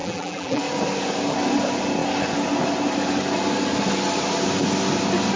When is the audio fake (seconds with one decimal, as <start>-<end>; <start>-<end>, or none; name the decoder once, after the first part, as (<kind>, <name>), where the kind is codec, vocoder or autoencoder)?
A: 0.0-0.6 (vocoder, BigVGAN v2)